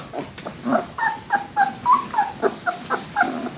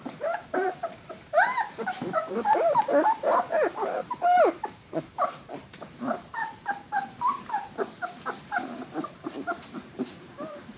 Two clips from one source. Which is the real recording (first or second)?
first